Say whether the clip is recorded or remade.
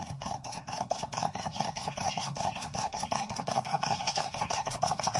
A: remade